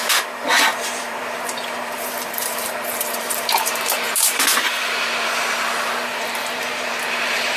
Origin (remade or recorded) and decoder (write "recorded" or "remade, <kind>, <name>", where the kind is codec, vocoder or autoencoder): remade, vocoder, BigVGAN v2